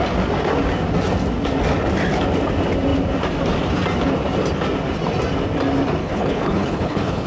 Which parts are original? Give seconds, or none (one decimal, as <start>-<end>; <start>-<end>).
0.0-6.0